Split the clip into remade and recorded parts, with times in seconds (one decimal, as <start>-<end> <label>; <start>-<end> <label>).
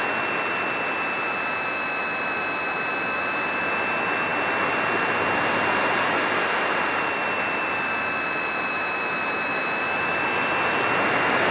0.0-11.5 recorded